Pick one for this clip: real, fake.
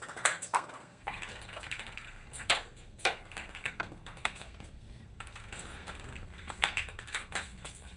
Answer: fake